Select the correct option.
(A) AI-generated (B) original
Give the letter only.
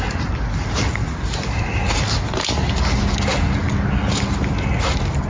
B